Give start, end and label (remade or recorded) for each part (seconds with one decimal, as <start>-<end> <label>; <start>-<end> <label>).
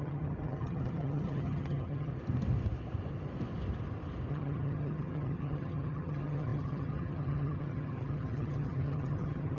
0.0-2.1 remade; 2.1-4.3 recorded; 4.3-9.6 remade